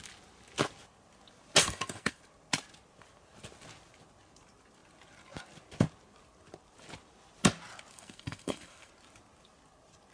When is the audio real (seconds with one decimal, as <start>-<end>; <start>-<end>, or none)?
0.0-1.6; 2.2-7.9; 8.9-10.1